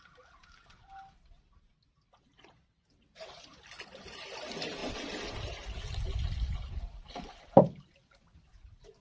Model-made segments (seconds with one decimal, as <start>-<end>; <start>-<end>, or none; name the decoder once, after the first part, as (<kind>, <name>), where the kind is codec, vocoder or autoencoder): none